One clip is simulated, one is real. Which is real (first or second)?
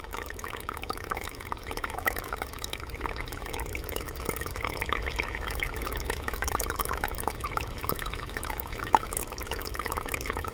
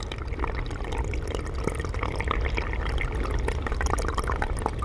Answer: second